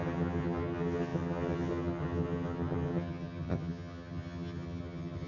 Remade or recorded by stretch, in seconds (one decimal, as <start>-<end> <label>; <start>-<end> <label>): 0.0-5.3 remade